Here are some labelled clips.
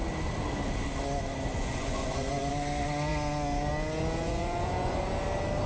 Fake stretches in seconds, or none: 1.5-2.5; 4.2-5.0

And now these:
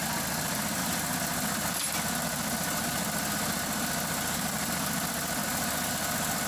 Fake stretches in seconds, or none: none

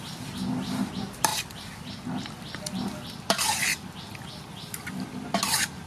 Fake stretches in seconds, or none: none

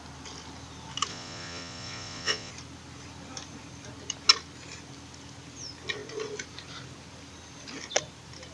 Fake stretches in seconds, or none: 1.1-2.5

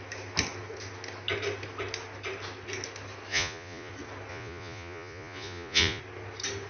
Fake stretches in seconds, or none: 3.3-3.9; 4.3-6.0

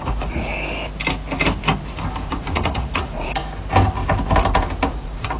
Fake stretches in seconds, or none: 0.0-0.5; 2.3-3.4; 4.9-5.4